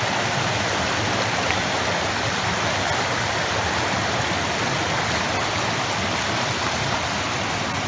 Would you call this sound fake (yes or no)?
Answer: no